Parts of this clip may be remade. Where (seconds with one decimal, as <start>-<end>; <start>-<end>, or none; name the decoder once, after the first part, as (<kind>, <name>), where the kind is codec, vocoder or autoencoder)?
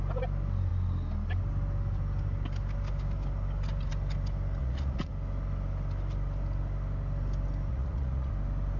4.6-5.1 (vocoder, Vocos); 7.7-8.3